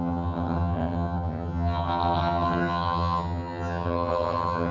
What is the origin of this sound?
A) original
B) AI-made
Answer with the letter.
B